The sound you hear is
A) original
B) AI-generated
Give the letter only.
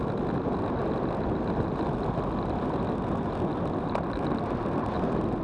A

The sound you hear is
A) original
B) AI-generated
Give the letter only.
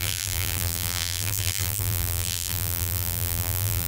B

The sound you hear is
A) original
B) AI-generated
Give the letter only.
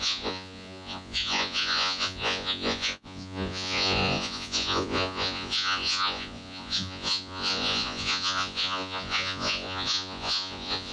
B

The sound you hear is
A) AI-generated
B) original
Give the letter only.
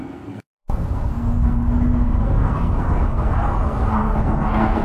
A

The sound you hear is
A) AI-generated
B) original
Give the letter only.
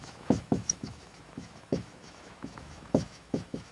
A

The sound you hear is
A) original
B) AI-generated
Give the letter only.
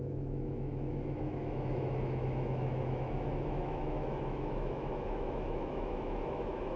B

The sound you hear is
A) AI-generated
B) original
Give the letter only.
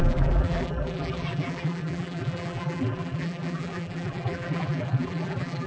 A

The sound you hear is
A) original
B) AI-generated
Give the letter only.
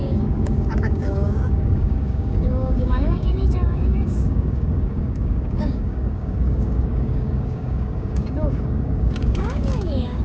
B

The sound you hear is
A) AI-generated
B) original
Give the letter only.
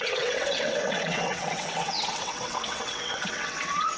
A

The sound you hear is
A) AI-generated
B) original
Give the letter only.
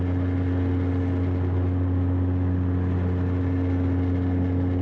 B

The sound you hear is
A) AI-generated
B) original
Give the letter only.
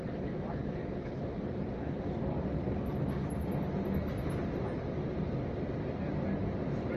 B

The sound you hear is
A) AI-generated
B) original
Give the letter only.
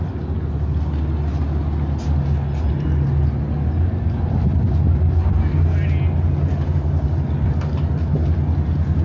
B